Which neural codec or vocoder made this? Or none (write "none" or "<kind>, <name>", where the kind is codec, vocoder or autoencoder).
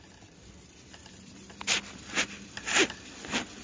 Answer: none